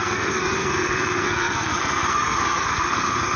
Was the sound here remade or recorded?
remade